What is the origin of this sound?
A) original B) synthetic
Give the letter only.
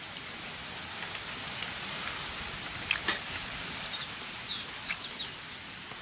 A